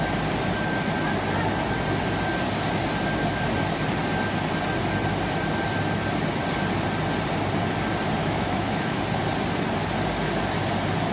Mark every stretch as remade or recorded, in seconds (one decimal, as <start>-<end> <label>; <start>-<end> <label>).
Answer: 0.0-8.2 recorded; 8.2-9.0 remade; 9.0-11.1 recorded